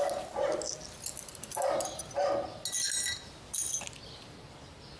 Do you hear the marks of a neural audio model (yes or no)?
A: no